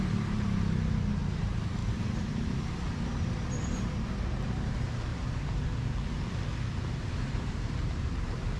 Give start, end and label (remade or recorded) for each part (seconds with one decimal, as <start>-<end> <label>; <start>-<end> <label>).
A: 0.0-5.1 remade; 5.1-7.1 recorded; 7.1-8.6 remade